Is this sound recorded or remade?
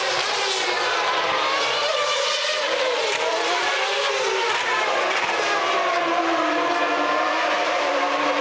remade